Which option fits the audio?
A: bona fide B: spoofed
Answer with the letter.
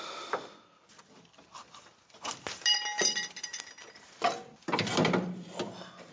A